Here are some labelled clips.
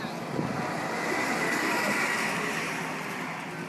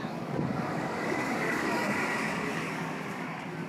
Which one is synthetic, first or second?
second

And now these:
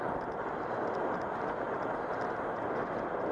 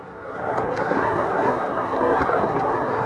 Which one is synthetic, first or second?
second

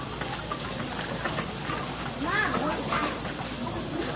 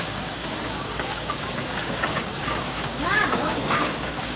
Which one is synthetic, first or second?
second